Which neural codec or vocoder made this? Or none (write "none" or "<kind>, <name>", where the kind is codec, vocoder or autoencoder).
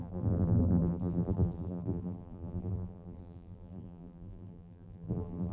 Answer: vocoder, BigVGAN v2